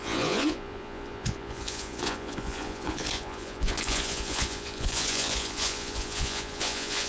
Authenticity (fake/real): fake